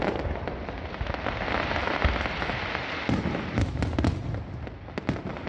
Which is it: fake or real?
real